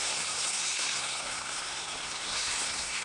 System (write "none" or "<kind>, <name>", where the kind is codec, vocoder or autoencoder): codec, SNAC